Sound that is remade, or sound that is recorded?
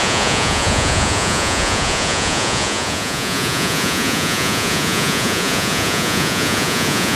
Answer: remade